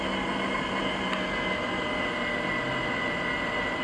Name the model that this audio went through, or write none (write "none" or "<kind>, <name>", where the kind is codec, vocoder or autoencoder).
none